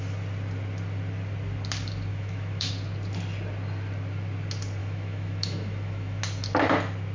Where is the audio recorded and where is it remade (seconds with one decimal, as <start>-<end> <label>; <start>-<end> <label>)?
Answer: 0.0-2.1 recorded; 2.1-2.7 remade; 2.7-4.8 recorded; 4.8-6.2 remade; 6.2-7.1 recorded